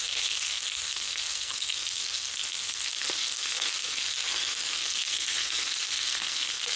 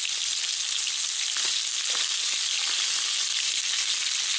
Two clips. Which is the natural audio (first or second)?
second